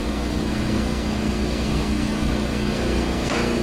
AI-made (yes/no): yes